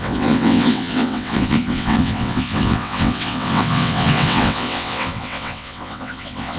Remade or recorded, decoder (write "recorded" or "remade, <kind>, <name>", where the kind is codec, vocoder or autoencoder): remade, vocoder, WaveNeXt